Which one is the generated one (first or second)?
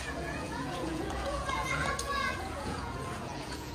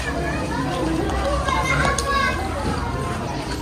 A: first